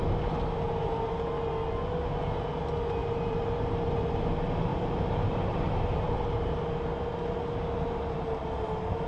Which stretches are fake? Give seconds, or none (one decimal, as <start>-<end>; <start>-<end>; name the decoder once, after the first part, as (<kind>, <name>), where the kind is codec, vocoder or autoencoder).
3.0-3.9 (vocoder, BigVGAN v2); 4.7-6.5